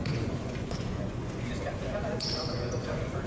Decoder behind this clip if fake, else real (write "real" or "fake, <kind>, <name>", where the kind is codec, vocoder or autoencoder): fake, vocoder, Vocos